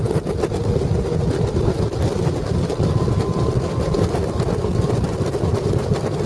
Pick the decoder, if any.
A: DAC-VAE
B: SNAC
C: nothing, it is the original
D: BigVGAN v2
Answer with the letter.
C